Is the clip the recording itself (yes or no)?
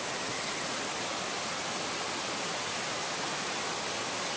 yes